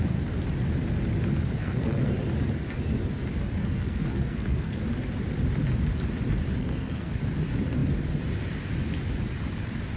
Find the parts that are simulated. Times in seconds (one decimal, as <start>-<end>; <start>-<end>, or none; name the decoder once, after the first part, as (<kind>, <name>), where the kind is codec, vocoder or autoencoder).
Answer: 1.6-2.1 (codec, SNAC); 3.6-4.8; 6.6-7.2